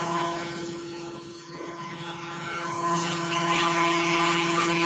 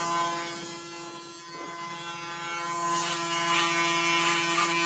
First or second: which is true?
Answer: second